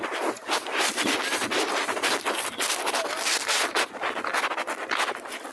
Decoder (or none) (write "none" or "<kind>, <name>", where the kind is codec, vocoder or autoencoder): none